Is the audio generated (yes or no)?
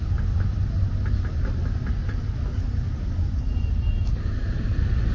no